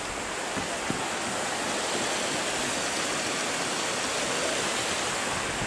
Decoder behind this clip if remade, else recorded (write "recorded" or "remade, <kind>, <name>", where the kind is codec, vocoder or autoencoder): recorded